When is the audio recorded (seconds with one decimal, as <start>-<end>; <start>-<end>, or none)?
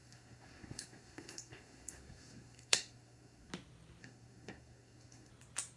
3.5-4.0; 5.3-5.8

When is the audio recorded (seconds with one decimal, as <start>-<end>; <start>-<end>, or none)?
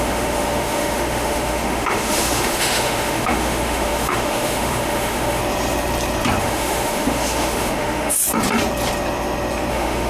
5.4-6.4; 8.2-9.7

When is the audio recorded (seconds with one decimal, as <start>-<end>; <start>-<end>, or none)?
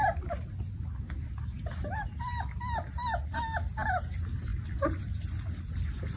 0.0-6.2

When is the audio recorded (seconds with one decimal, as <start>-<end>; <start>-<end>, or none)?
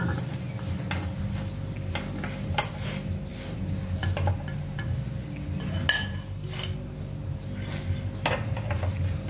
0.0-9.3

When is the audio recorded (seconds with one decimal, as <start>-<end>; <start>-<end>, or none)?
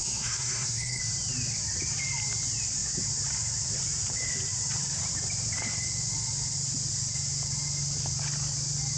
1.0-9.0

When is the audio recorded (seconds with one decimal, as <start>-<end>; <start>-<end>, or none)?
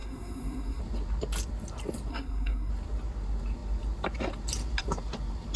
0.8-2.1; 2.7-5.6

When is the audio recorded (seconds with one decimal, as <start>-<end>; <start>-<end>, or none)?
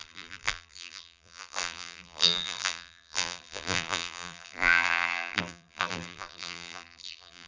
none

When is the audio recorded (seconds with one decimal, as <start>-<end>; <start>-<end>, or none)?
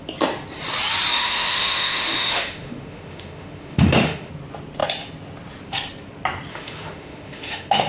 0.0-1.1; 4.3-6.5